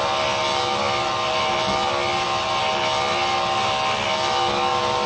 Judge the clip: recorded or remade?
recorded